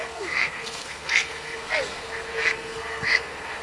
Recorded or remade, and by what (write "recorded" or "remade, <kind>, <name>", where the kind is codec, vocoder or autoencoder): remade, codec, SNAC